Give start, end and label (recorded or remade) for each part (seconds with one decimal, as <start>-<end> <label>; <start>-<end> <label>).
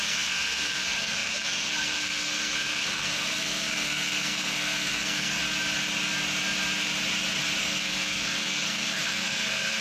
0.0-5.4 remade; 5.4-7.6 recorded; 7.6-9.8 remade